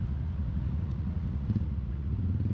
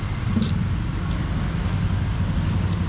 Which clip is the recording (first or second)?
second